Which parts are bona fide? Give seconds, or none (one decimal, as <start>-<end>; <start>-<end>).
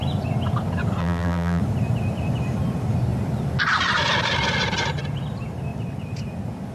0.0-1.0; 1.6-6.7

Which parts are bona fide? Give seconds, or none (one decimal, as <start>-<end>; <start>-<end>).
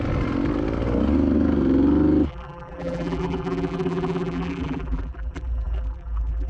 0.0-2.3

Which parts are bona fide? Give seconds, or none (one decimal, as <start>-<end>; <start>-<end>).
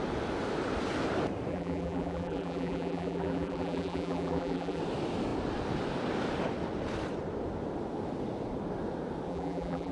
0.0-1.5; 4.8-9.3